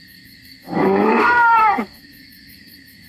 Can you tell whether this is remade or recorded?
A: remade